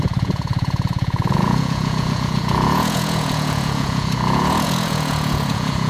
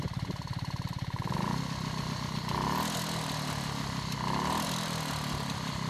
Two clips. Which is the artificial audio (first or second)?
first